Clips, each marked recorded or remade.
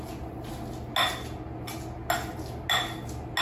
recorded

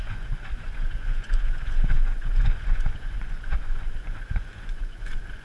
remade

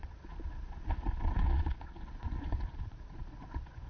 remade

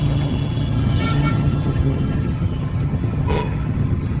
remade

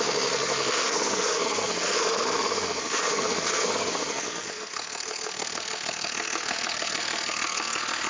remade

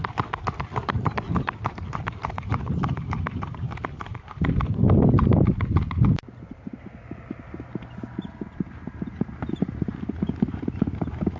recorded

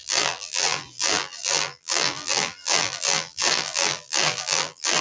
remade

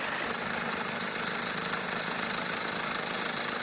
recorded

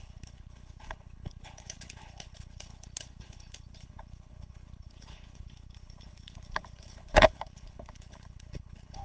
remade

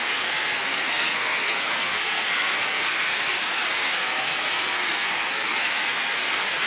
remade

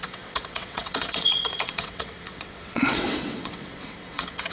remade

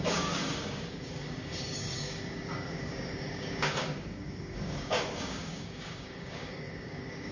remade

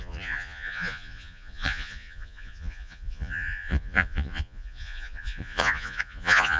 remade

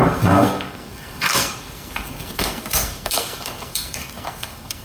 remade